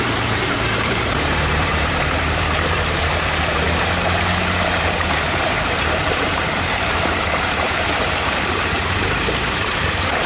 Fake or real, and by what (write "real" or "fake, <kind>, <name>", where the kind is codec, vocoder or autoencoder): fake, vocoder, BigVGAN v2